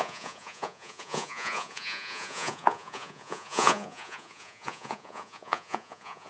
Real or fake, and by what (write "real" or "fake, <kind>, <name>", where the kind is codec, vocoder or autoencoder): fake, vocoder, Vocos